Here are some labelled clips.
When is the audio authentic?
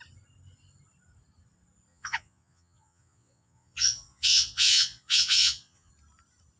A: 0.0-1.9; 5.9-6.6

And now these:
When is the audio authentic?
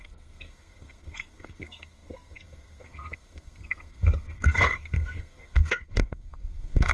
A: none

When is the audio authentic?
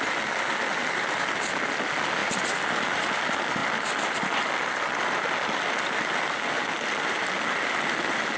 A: 0.0-8.4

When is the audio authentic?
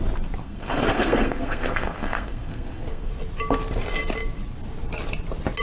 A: 0.0-0.4; 3.1-5.6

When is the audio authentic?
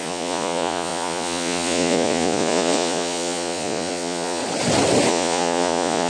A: 4.4-5.1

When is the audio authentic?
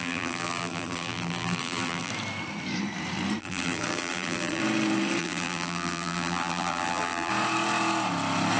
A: 2.1-3.4; 4.6-5.2; 7.3-8.6